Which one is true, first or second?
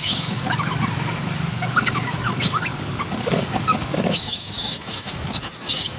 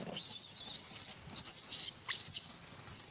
second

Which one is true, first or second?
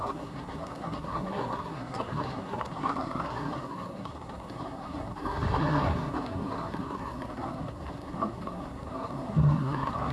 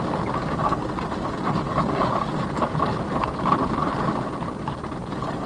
second